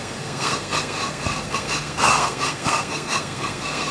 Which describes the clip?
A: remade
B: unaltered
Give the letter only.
A